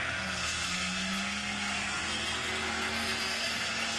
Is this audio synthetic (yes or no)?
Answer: yes